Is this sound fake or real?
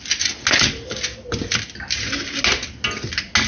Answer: real